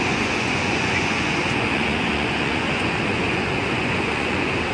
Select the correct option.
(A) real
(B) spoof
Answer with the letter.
B